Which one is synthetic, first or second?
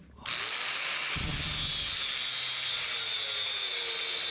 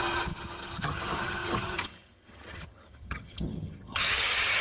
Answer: second